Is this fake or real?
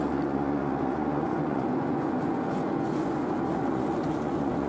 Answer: fake